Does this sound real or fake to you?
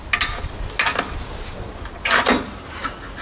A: real